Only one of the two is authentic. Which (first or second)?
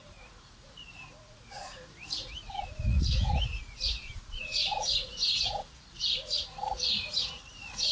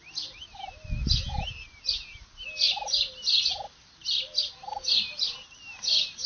second